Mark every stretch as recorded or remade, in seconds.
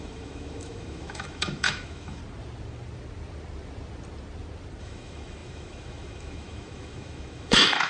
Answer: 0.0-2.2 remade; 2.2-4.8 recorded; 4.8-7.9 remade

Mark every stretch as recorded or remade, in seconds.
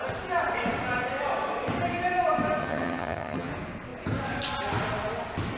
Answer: 0.0-2.6 recorded; 2.6-3.5 remade; 3.5-5.6 recorded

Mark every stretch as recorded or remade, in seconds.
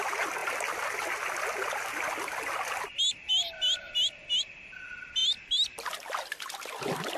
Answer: 0.0-7.2 recorded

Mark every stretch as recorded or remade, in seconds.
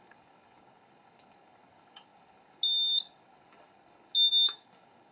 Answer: 0.0-5.1 remade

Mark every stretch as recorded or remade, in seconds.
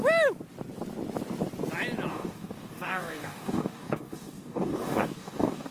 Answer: 0.0-2.1 recorded; 2.1-5.7 remade